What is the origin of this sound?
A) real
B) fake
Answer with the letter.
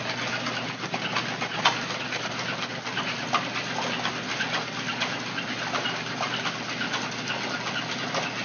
A